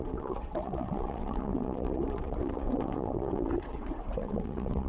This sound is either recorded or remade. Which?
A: remade